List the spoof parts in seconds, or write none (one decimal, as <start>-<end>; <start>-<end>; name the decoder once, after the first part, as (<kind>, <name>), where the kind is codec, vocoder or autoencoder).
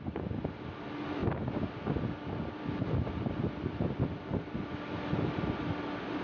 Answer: none